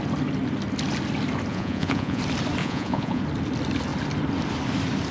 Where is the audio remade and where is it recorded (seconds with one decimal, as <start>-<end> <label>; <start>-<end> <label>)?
0.0-1.5 recorded; 1.5-2.2 remade; 2.2-2.6 recorded; 2.6-3.2 remade; 3.2-5.1 recorded